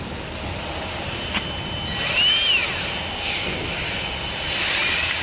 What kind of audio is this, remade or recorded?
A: recorded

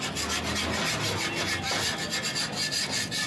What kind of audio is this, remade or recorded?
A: recorded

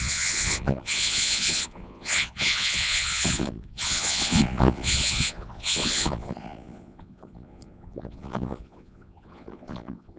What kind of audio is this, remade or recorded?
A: remade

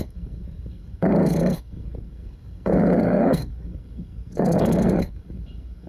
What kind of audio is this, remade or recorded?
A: remade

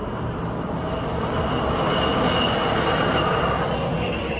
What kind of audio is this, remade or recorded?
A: recorded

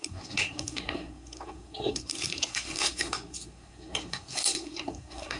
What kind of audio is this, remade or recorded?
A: remade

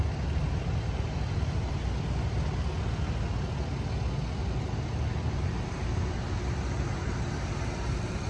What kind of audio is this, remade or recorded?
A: recorded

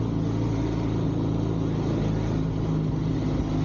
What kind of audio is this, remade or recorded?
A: recorded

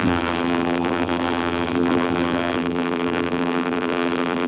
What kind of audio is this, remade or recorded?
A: remade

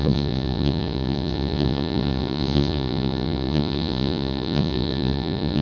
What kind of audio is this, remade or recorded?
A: remade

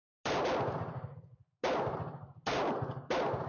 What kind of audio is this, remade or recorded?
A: recorded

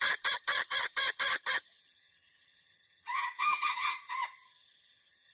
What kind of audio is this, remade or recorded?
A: remade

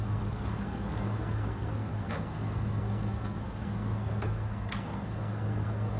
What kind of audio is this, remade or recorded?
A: remade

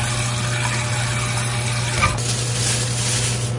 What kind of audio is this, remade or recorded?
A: recorded